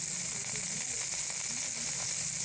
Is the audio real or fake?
real